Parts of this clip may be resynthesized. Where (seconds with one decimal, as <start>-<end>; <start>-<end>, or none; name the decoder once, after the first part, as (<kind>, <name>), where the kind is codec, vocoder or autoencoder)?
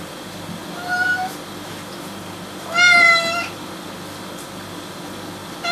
none